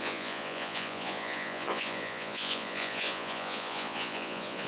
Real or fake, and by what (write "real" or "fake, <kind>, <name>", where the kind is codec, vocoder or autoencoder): fake, vocoder, Vocos